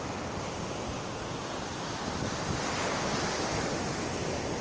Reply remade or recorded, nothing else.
recorded